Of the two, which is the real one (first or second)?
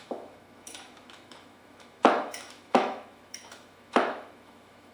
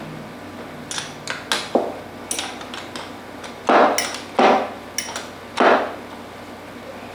second